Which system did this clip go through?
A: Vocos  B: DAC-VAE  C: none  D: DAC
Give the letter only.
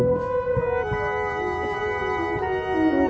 C